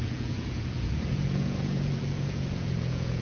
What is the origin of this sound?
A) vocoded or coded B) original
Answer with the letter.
A